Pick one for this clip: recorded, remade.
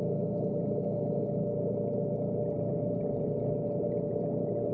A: recorded